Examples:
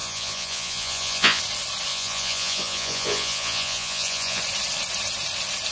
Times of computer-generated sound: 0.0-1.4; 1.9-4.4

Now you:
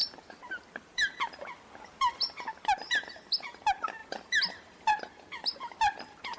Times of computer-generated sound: none

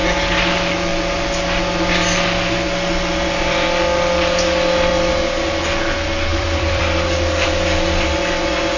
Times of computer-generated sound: 6.3-6.8